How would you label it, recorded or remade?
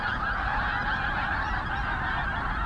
recorded